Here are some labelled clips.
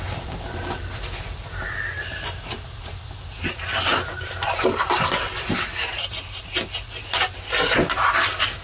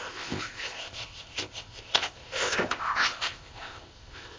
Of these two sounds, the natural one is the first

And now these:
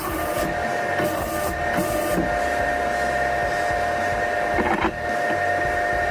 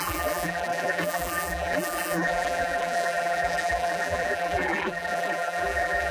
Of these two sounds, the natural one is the first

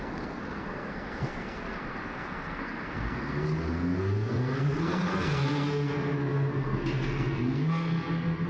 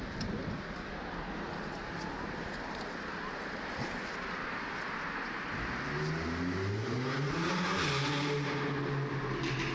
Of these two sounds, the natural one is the second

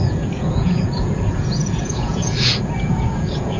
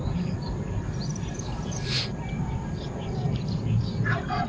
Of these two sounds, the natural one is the second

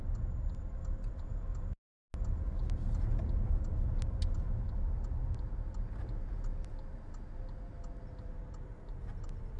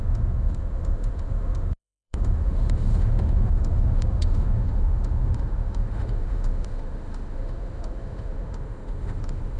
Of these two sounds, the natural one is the first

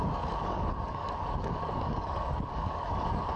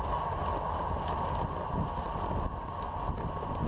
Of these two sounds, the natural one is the second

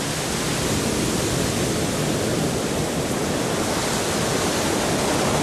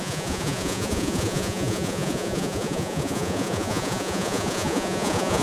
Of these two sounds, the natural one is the first